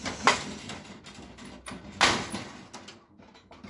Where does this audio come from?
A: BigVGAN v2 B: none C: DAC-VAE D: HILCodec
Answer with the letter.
B